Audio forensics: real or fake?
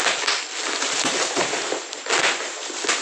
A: real